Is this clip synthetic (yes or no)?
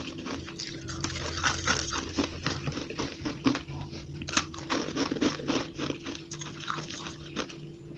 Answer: no